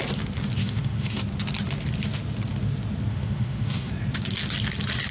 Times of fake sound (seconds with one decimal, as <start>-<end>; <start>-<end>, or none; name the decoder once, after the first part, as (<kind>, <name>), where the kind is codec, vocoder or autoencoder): 0.6-1.2 (autoencoder, DAC-VAE); 3.1-3.9